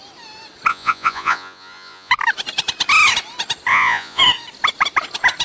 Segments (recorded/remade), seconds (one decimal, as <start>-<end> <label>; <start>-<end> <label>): 0.0-0.7 recorded; 0.7-2.1 remade; 2.1-3.7 recorded; 3.7-4.2 remade; 4.2-5.4 recorded